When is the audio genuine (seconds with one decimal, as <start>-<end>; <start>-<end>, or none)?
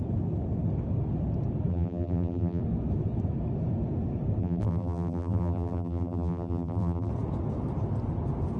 0.0-1.7; 2.6-4.4; 7.1-8.6